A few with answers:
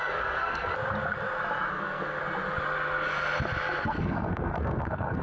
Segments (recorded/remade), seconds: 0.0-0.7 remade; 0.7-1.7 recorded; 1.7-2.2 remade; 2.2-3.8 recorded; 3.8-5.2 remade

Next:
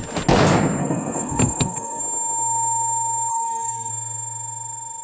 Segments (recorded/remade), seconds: 0.0-0.8 recorded; 0.8-2.0 remade; 2.0-3.3 recorded; 3.3-3.9 remade; 3.9-5.0 recorded